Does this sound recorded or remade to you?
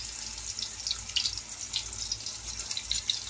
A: recorded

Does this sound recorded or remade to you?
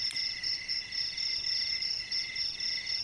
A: recorded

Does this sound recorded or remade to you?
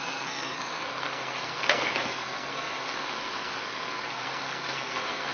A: remade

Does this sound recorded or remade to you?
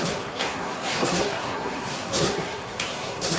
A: remade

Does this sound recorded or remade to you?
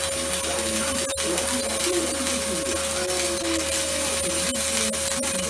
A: recorded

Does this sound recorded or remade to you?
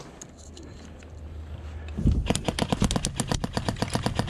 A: recorded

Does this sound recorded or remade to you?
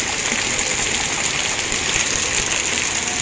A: recorded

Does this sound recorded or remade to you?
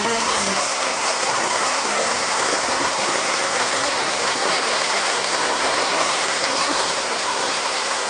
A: remade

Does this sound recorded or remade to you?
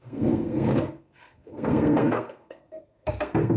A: remade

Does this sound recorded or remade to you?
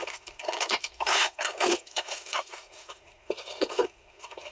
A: remade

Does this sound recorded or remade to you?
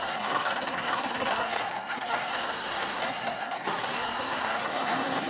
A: remade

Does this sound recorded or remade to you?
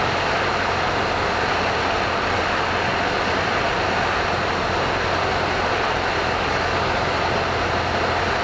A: recorded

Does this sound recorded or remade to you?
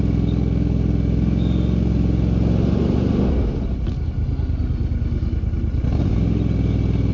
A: recorded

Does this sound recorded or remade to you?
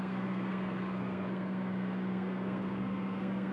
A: remade